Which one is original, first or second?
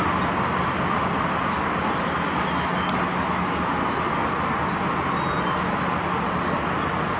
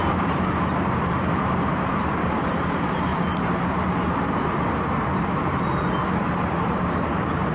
first